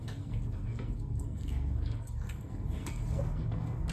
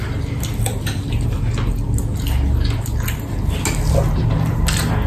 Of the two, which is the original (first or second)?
second